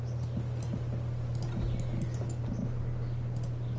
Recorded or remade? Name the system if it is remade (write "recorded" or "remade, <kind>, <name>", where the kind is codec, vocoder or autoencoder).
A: recorded